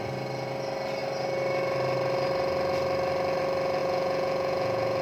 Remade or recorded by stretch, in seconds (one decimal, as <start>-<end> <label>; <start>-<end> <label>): 0.0-3.8 recorded; 3.8-5.0 remade